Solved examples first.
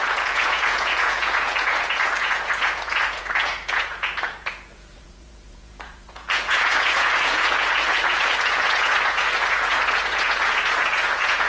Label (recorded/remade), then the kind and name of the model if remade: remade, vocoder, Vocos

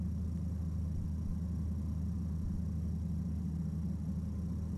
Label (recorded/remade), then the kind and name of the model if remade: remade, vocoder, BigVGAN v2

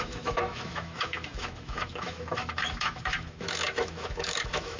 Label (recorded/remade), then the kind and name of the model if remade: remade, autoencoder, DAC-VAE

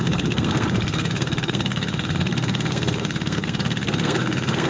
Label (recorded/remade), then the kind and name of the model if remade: remade, codec, SNAC